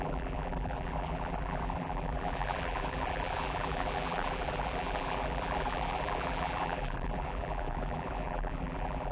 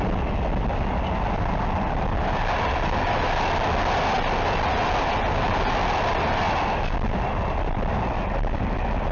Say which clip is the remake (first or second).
first